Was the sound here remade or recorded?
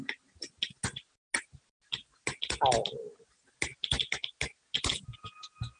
recorded